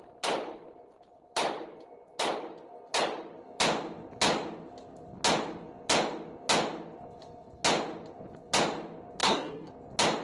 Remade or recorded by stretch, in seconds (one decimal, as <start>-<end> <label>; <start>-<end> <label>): 0.0-9.2 recorded; 9.2-9.7 remade; 9.7-10.2 recorded